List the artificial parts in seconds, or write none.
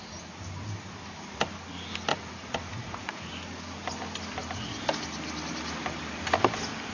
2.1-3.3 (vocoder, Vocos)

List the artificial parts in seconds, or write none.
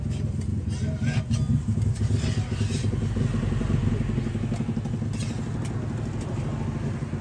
none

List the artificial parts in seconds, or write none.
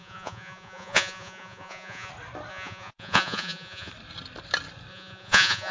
0.0-2.1 (vocoder, Vocos); 2.5-3.9; 4.9-5.7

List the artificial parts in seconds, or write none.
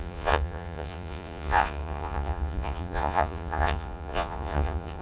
0.0-5.0 (vocoder, Vocos)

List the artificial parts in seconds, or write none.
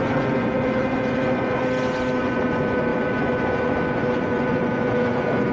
0.0-1.6 (vocoder, Vocos); 2.2-5.5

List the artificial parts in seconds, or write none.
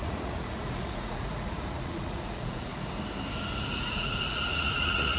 0.0-2.7 (vocoder, Vocos); 3.3-5.2